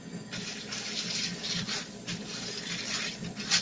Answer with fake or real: real